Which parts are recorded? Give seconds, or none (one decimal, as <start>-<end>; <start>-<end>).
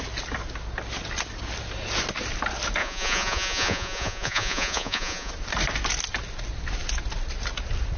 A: 0.0-2.8; 5.3-8.0